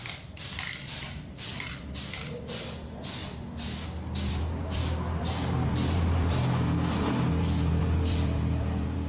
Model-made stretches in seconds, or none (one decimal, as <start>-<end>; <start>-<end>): none